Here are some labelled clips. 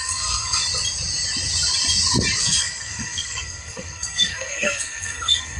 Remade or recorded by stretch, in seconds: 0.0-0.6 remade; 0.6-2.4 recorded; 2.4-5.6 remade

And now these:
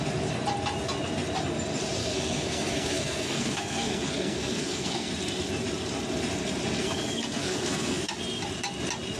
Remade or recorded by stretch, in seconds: 0.0-2.0 recorded; 2.0-5.1 remade; 5.1-6.8 recorded; 6.8-8.1 remade; 8.1-9.2 recorded

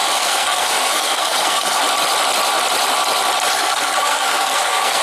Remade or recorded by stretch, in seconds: 0.0-1.8 remade; 1.8-3.5 recorded; 3.5-5.0 remade

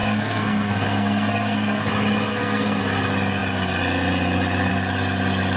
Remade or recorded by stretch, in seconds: 0.0-1.9 remade; 1.9-2.3 recorded; 2.3-2.8 remade; 2.8-5.6 recorded

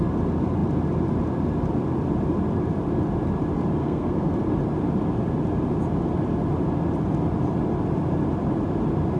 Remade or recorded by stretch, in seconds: 0.0-3.8 recorded; 3.8-4.3 remade; 4.3-9.2 recorded